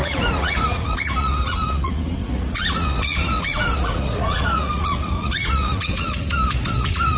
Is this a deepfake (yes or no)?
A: yes